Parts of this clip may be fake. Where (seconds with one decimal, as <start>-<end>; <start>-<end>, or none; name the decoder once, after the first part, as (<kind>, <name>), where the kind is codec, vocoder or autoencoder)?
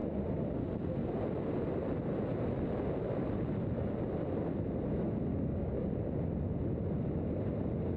5.3-5.9 (codec, DAC)